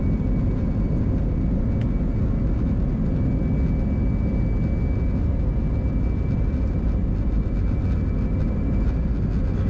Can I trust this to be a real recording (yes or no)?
yes